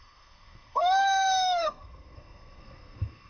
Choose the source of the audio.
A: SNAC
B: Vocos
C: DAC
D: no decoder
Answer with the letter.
A